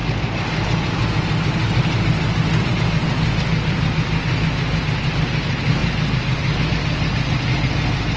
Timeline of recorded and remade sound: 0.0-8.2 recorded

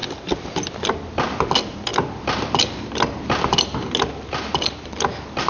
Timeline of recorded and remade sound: 0.0-5.5 recorded

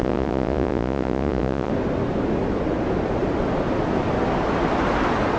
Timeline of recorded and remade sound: 0.0-1.7 remade; 1.7-5.4 recorded

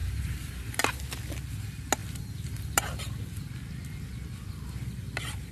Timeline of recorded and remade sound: 0.0-0.8 remade; 0.8-2.0 recorded; 2.0-2.8 remade; 2.8-5.5 recorded

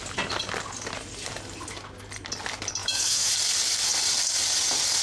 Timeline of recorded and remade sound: 0.0-2.8 recorded; 2.8-3.3 remade; 3.3-5.0 recorded

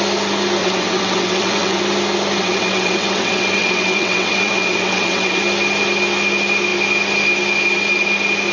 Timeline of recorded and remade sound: 0.0-0.6 recorded; 0.6-1.8 remade; 1.8-2.4 recorded; 2.4-5.4 remade; 5.4-8.5 recorded